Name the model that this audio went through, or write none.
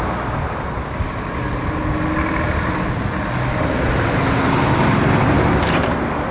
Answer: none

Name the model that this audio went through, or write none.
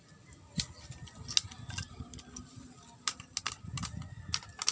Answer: none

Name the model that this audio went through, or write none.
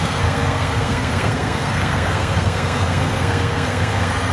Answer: codec, SNAC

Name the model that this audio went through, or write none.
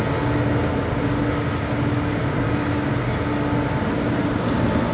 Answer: none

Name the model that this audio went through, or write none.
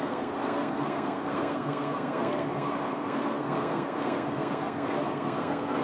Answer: codec, SNAC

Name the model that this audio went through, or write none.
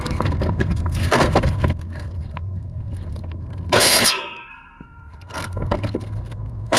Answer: codec, SNAC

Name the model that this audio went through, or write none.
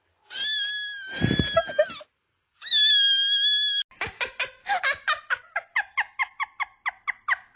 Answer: none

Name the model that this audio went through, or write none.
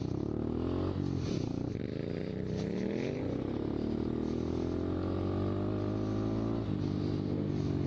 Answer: none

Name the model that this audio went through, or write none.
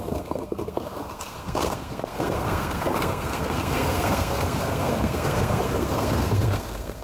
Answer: codec, SNAC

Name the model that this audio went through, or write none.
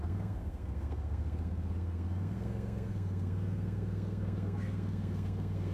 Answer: codec, SNAC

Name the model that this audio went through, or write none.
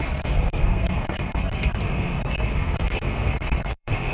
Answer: codec, SNAC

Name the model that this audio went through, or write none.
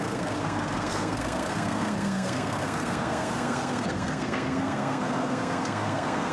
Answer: codec, SNAC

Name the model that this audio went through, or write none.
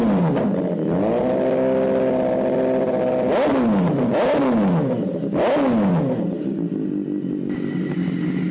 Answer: none